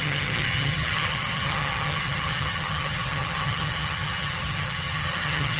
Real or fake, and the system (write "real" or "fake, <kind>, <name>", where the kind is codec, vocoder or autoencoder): fake, vocoder, HiFi-GAN